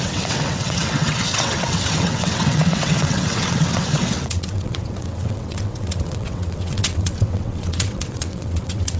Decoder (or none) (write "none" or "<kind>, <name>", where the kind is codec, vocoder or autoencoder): vocoder, WaveNeXt